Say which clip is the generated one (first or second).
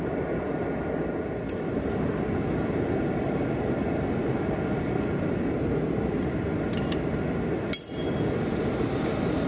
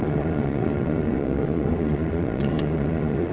second